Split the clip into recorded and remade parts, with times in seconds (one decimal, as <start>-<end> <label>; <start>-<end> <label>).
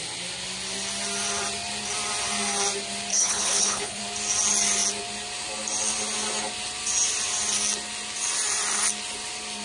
0.0-3.1 recorded; 3.1-4.0 remade; 4.0-9.6 recorded